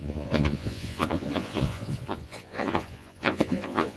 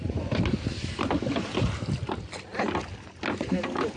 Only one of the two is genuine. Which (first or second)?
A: second